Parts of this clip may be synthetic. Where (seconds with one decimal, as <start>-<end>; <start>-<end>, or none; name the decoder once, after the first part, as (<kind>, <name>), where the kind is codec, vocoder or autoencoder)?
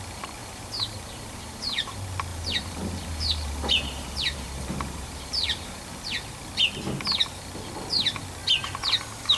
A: 0.4-1.9 (vocoder, BigVGAN v2); 2.3-5.8